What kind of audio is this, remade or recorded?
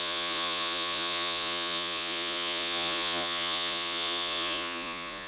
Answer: remade